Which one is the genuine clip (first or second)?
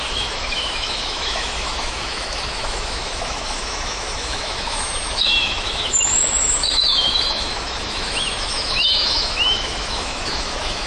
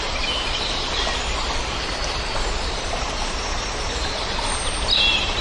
second